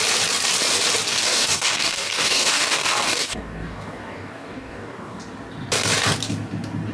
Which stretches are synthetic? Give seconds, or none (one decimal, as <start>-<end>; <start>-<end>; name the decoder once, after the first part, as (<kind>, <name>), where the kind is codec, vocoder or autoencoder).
1.1-5.2 (codec, DAC)